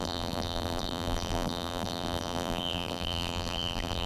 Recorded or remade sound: remade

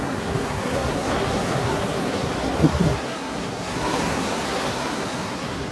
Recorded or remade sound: remade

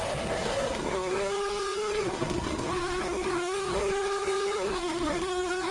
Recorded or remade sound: remade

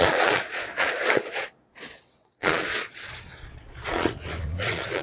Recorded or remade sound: remade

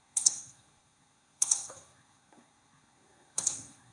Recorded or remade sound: remade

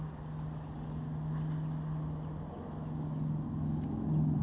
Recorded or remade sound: recorded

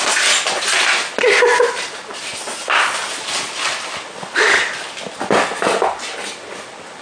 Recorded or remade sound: recorded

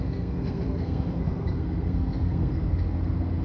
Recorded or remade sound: remade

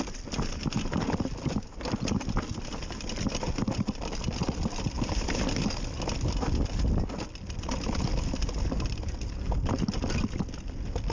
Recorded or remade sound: recorded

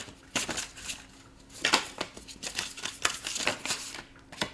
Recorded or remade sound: recorded